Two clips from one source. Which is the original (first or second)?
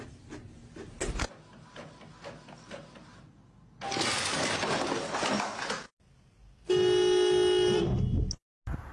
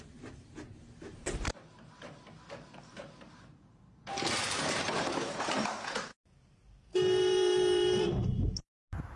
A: first